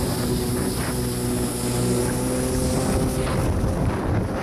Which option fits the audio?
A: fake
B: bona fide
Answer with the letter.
B